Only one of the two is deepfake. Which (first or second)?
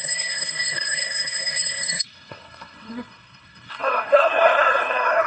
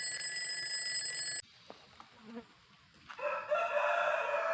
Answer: first